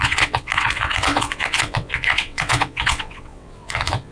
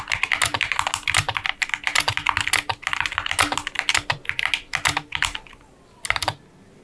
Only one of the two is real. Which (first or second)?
second